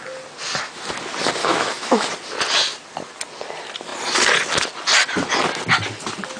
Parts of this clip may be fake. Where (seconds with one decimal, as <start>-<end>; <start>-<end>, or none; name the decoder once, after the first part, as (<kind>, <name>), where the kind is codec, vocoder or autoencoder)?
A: 1.4-2.1 (autoencoder, DAC-VAE)